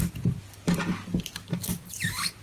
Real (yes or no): yes